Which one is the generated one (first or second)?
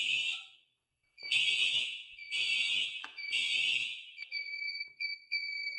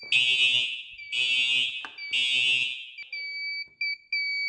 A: first